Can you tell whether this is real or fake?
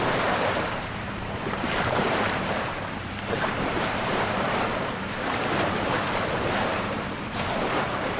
fake